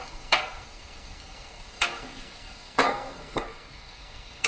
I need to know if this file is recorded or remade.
remade